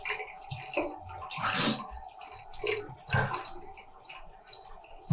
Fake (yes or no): no